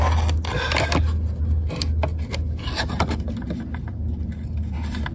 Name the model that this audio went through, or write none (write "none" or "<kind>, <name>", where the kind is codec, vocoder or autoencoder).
none